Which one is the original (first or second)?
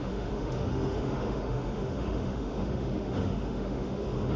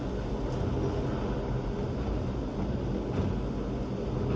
second